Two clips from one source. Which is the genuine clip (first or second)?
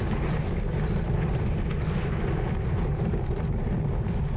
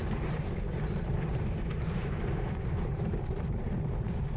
first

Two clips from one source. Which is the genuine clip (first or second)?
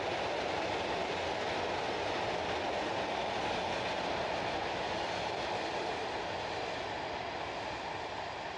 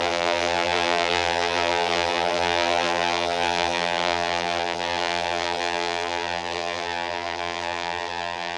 first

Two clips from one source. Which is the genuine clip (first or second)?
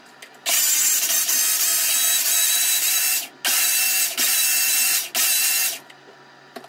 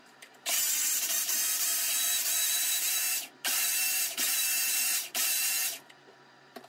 first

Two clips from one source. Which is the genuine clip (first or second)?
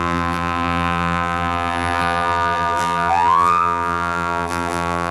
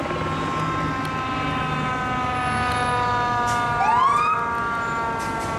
second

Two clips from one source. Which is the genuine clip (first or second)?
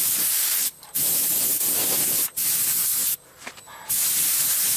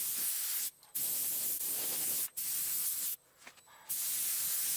second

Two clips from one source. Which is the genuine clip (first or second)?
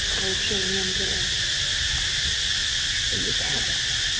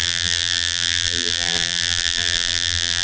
first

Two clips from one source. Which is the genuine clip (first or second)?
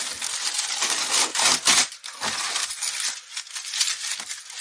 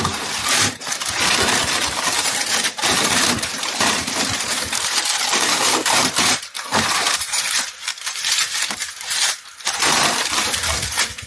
first